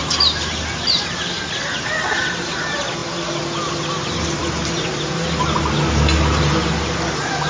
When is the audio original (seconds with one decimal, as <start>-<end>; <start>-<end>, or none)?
0.0-7.5